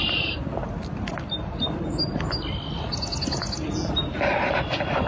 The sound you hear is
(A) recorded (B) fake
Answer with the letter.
A